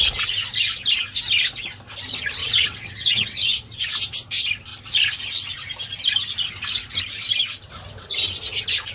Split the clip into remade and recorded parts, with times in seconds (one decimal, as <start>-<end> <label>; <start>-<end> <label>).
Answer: 0.0-2.4 recorded; 2.4-3.8 remade; 3.8-8.9 recorded